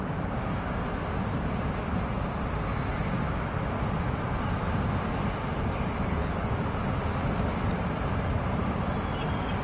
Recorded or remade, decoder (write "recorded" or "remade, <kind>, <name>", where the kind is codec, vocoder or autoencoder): recorded